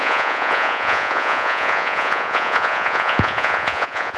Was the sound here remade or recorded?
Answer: remade